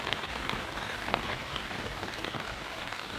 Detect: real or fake fake